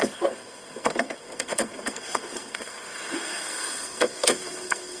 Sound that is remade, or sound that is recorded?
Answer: remade